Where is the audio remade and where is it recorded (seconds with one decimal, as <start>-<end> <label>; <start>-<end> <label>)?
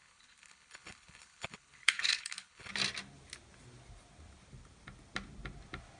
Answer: 0.0-2.7 remade; 2.7-6.0 recorded